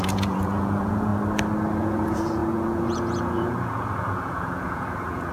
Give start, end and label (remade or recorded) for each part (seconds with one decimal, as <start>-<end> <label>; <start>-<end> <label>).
0.0-1.1 remade; 1.1-1.8 recorded; 1.8-5.3 remade